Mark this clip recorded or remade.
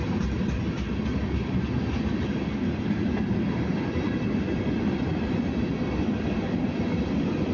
recorded